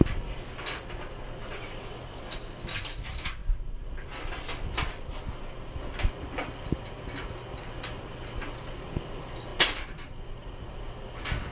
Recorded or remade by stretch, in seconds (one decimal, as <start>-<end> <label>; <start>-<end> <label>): 0.0-1.4 recorded; 1.4-2.4 remade; 2.4-11.5 recorded